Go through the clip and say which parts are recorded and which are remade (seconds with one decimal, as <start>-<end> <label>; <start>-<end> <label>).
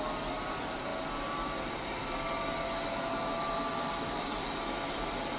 0.0-5.4 recorded